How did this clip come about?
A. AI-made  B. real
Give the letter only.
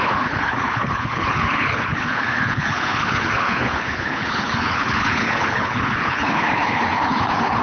A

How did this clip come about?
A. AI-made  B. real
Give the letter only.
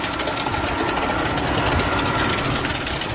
B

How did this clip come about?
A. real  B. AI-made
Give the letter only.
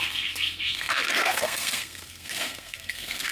B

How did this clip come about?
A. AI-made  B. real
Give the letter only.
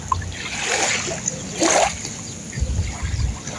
B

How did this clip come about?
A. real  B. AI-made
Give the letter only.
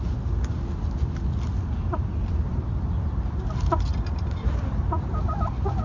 A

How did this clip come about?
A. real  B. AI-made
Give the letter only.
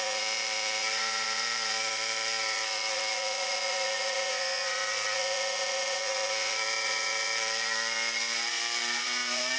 B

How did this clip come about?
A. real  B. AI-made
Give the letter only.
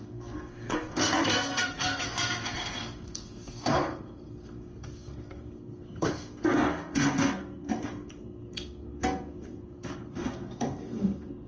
B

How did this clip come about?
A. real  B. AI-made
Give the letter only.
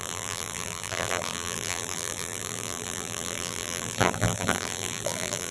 B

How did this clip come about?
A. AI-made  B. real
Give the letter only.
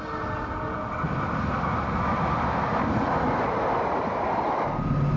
B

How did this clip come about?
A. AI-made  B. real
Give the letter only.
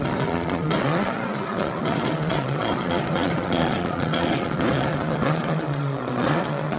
A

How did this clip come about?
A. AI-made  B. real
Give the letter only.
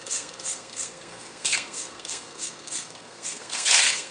A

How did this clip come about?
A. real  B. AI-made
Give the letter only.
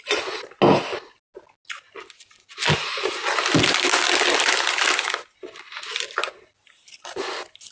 A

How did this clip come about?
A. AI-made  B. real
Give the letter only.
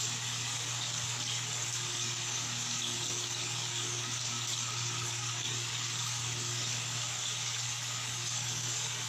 A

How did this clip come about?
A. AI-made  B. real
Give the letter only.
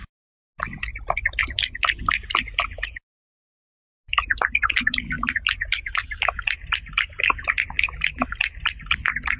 B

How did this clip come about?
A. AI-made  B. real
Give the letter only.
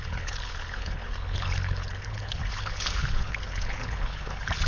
A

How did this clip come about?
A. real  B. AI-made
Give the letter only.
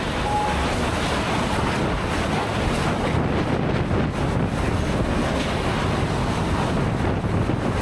A